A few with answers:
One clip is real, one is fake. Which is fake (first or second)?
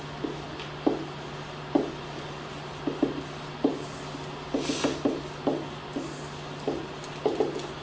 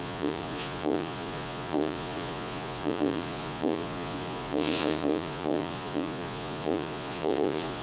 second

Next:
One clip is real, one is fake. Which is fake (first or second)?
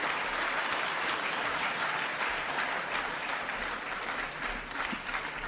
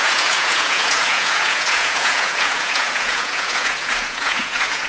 second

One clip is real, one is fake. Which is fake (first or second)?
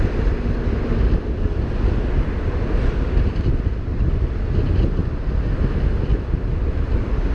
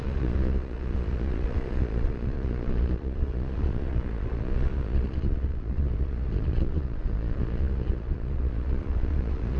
second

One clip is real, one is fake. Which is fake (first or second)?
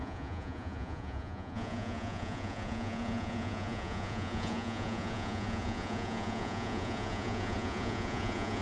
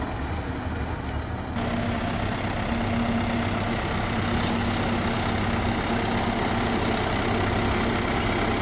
first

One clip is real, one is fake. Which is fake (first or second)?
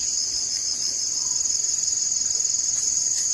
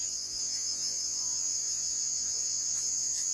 second